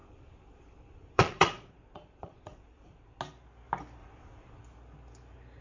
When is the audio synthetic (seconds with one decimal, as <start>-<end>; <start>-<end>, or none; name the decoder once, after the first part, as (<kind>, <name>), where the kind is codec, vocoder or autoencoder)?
0.0-3.2 (vocoder, Vocos); 4.0-4.6